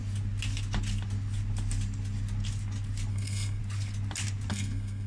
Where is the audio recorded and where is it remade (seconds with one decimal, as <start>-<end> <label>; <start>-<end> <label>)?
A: 0.0-3.1 recorded; 3.1-3.6 remade; 3.6-4.5 recorded; 4.5-5.1 remade

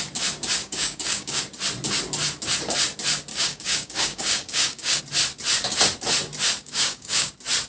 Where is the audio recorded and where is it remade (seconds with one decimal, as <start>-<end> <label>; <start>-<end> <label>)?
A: 0.0-0.6 recorded; 0.6-1.4 remade; 1.4-3.3 recorded; 3.3-5.0 remade; 5.0-6.6 recorded; 6.6-7.3 remade; 7.3-7.7 recorded

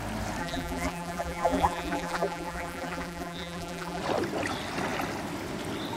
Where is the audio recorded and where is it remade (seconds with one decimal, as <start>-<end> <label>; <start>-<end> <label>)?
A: 0.0-0.4 recorded; 0.4-4.0 remade; 4.0-6.0 recorded

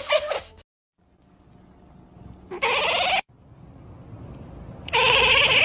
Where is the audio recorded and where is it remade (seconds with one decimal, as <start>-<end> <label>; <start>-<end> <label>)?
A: 0.0-5.6 recorded

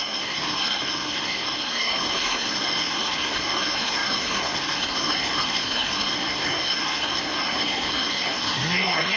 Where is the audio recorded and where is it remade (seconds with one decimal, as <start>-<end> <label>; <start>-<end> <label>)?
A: 0.0-9.2 remade

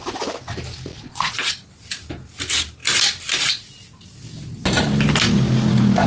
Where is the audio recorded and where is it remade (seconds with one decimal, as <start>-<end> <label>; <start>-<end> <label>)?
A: 0.0-0.9 recorded; 0.9-1.5 remade; 1.5-6.1 recorded

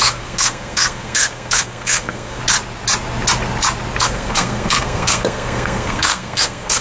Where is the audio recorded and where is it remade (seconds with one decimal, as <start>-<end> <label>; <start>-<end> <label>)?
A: 0.0-2.4 remade; 2.4-4.0 recorded; 4.0-6.8 remade